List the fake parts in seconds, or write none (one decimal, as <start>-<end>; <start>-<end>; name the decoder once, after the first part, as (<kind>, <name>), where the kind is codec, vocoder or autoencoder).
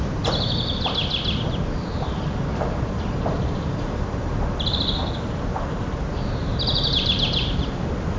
1.9-4.4 (vocoder, BigVGAN v2); 6.4-8.2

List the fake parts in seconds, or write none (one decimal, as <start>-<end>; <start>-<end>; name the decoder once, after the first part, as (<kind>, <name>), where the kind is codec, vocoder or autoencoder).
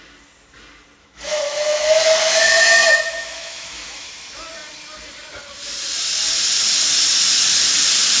1.0-4.1 (autoencoder, DAC-VAE)